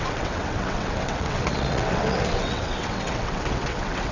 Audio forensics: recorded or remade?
remade